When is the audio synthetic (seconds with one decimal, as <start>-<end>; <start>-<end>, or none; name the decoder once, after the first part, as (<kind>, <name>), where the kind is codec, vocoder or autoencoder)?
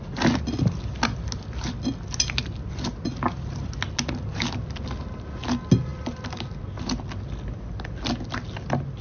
none